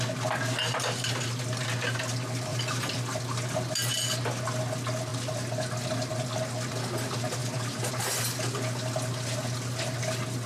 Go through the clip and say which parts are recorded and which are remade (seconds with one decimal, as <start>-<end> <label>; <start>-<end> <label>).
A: 0.0-2.5 recorded; 2.5-3.2 remade; 3.2-7.4 recorded; 7.4-7.9 remade; 7.9-10.5 recorded